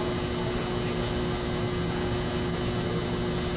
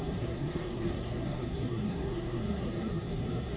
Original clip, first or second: first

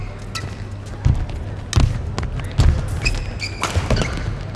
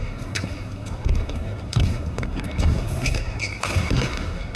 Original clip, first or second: first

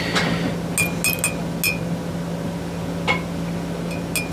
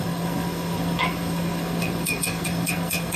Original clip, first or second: first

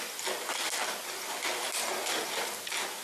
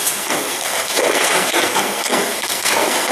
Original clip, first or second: first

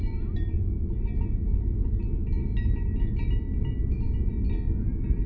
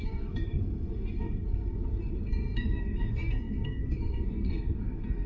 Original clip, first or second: first